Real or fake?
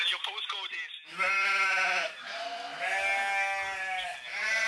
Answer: real